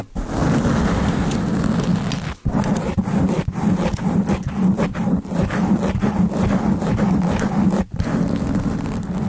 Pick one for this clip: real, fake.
real